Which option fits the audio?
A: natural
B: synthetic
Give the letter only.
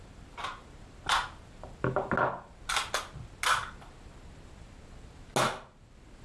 A